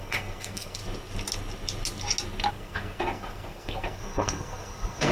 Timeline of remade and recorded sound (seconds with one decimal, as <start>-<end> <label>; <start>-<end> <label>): 0.0-0.8 remade; 0.8-2.5 recorded; 2.5-5.1 remade